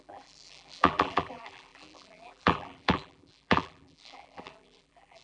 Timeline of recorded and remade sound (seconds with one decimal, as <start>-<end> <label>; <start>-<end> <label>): 0.0-5.2 remade